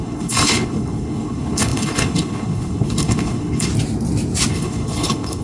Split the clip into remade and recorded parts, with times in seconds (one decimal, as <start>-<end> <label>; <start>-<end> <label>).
0.0-3.7 remade; 3.7-4.5 recorded; 4.5-5.4 remade